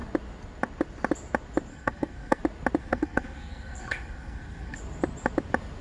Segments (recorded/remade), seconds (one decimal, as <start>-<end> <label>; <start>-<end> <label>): 0.0-1.7 recorded; 1.7-2.4 remade; 2.4-2.8 recorded; 2.8-4.8 remade; 4.8-5.8 recorded

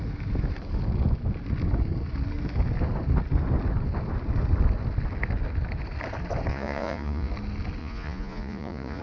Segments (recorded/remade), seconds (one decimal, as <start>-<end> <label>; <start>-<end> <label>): 0.0-6.5 recorded; 6.5-7.3 remade; 7.3-7.8 recorded; 7.8-9.0 remade

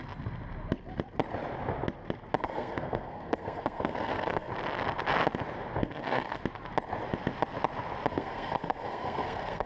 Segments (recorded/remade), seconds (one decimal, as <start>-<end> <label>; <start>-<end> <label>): 0.0-2.4 recorded; 2.4-4.5 remade; 4.5-5.8 recorded; 5.8-6.4 remade; 6.4-8.1 recorded; 8.1-9.7 remade

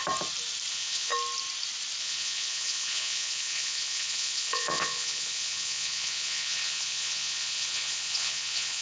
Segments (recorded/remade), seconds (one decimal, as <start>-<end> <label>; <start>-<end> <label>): 0.0-0.7 recorded; 0.7-1.1 remade; 1.1-2.0 recorded; 2.0-8.8 remade

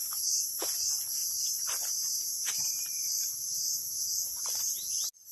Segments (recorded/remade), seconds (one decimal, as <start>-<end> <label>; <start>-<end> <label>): 0.0-1.2 recorded; 1.2-4.0 remade; 4.0-5.3 recorded

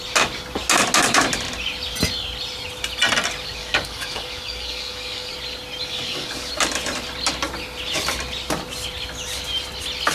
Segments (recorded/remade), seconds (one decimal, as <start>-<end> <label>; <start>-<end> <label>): 0.0-3.6 recorded; 3.6-5.3 remade; 5.3-5.8 recorded; 5.8-6.5 remade; 6.5-10.1 recorded

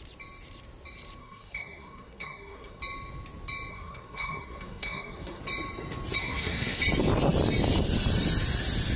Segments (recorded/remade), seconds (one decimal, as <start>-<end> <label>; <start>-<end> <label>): 0.0-1.2 recorded; 1.2-2.8 remade; 2.8-3.7 recorded; 3.7-5.4 remade; 5.4-6.2 recorded; 6.2-6.8 remade; 6.8-9.0 recorded

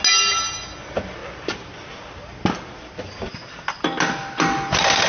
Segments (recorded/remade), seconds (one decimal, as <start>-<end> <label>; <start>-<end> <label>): 0.0-5.1 recorded